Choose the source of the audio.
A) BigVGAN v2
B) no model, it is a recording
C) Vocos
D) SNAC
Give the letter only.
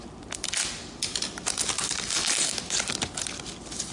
B